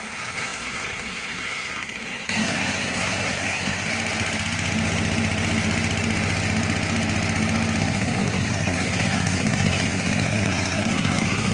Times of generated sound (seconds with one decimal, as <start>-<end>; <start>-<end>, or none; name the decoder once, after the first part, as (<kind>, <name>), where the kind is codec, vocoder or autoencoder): 0.0-3.9 (codec, SNAC); 7.8-11.5